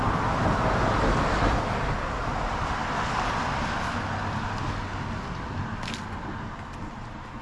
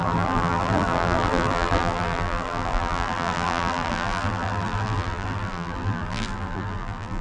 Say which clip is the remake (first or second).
second